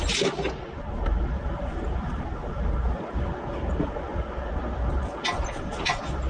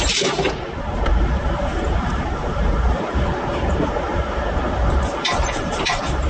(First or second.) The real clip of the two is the first